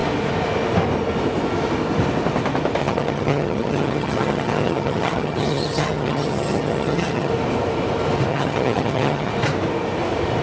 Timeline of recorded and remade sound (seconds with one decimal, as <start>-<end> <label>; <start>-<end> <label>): 0.0-2.8 recorded; 2.8-7.3 remade; 7.3-8.3 recorded; 8.3-9.3 remade; 9.3-10.4 recorded